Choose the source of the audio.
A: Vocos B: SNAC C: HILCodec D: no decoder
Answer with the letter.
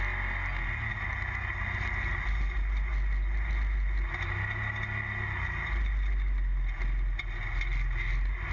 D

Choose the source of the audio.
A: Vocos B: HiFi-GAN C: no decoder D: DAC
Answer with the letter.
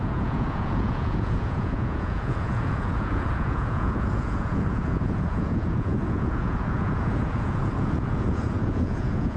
A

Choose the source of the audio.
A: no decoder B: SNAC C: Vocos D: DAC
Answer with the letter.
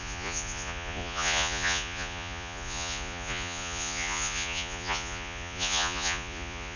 C